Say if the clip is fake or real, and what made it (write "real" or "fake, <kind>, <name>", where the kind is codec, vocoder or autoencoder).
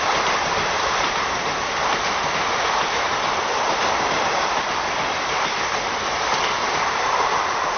fake, vocoder, BigVGAN v2